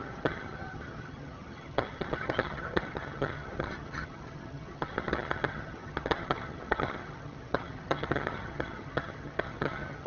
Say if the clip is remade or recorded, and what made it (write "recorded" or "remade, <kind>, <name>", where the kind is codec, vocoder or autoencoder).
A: remade, vocoder, HiFi-GAN